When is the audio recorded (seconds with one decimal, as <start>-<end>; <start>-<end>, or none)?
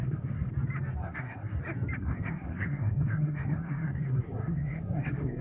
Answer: 0.5-1.0; 1.6-2.0